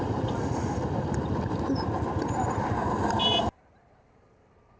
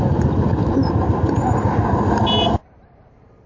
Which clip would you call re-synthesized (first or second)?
first